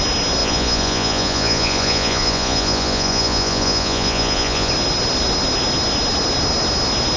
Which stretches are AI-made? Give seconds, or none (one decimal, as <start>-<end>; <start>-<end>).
0.4-4.7